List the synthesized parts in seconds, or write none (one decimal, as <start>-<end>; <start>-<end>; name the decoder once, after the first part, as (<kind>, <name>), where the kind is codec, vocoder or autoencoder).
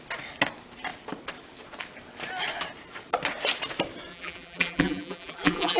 4.1-5.8 (vocoder, BigVGAN v2)